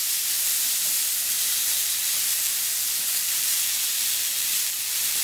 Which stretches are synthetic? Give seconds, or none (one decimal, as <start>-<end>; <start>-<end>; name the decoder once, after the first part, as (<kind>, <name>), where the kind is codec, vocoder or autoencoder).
1.3-2.6 (vocoder, BigVGAN v2); 3.2-5.2

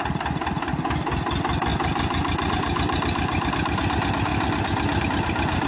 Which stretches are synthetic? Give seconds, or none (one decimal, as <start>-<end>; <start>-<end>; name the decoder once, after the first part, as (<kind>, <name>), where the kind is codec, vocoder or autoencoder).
0.5-4.3 (vocoder, BigVGAN v2); 5.0-5.7